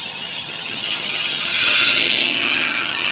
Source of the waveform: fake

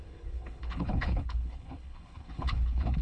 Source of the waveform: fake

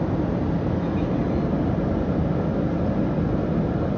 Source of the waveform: real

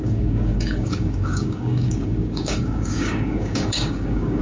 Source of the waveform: fake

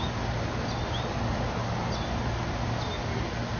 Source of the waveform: real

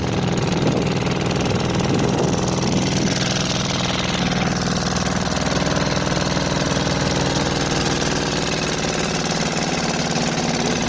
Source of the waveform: real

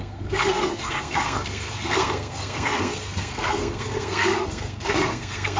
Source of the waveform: fake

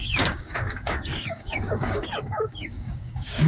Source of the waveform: fake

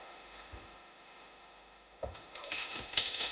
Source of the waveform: fake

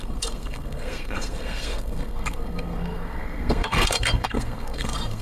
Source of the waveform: fake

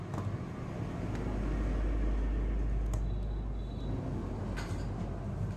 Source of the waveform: real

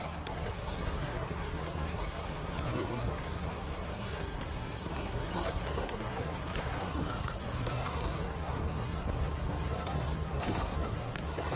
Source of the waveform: fake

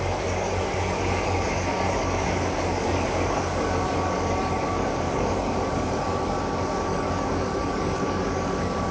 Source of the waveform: fake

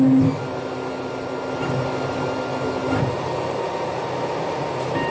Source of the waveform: real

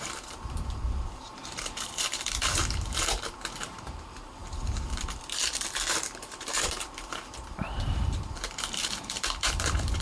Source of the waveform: fake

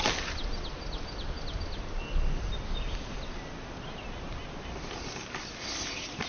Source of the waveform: real